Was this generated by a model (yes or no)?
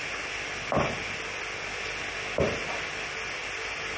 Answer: no